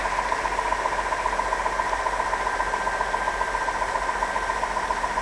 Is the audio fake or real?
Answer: real